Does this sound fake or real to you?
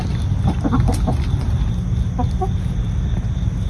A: real